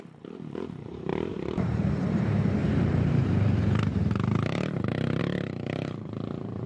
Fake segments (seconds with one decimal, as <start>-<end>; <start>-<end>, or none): 0.0-6.7